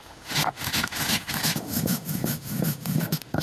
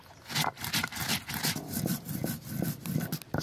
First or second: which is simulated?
first